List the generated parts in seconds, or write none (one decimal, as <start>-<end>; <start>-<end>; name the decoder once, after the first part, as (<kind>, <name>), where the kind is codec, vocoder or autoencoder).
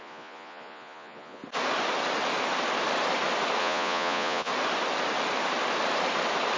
0.0-1.4 (vocoder, Vocos); 3.6-4.5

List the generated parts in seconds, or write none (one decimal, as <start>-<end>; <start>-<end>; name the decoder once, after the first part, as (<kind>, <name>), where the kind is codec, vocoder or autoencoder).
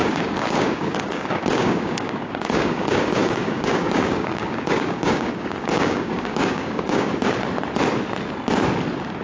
0.0-7.1 (codec, DAC)